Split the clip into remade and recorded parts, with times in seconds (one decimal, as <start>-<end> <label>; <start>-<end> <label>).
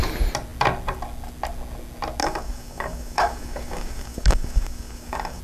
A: 0.0-2.2 recorded; 2.2-5.4 remade